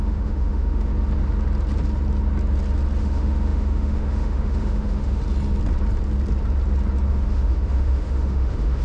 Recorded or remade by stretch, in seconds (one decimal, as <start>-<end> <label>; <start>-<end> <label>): 0.0-0.9 remade; 0.9-3.0 recorded; 3.0-5.2 remade; 5.2-7.1 recorded; 7.1-8.8 remade